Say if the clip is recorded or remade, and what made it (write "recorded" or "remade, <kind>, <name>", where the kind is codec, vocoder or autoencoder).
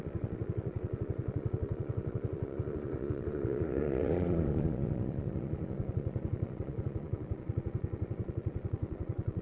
remade, vocoder, Vocos